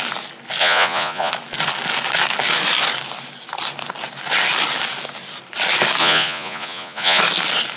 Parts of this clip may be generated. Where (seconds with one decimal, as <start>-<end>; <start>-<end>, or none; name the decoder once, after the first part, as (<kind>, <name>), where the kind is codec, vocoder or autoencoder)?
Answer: 0.6-1.3 (vocoder, Vocos); 6.0-7.2